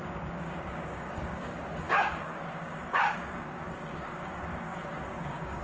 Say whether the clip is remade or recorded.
remade